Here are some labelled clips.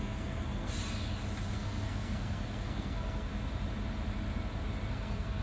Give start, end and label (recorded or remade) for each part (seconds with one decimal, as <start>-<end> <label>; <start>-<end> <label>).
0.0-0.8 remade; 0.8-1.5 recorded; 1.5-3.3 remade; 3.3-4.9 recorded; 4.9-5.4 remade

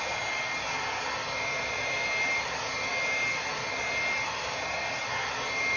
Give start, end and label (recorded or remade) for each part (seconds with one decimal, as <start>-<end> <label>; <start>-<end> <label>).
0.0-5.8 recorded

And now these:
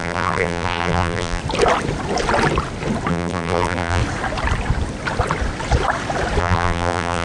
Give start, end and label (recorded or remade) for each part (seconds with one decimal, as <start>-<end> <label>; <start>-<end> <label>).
0.0-1.4 remade; 1.4-3.1 recorded; 3.1-4.0 remade; 4.0-6.4 recorded; 6.4-7.2 remade

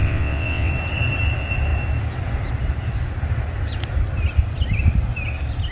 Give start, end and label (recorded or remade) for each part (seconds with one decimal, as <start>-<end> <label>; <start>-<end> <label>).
0.0-0.7 remade; 0.7-5.7 recorded

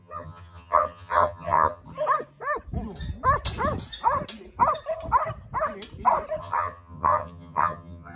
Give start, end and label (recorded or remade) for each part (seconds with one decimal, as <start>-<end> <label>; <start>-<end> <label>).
0.0-1.8 remade; 1.8-6.4 recorded; 6.4-8.2 remade